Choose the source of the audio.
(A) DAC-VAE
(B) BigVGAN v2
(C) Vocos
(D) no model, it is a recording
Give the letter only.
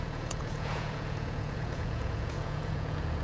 C